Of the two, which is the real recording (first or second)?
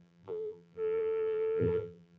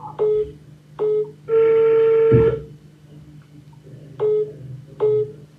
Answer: second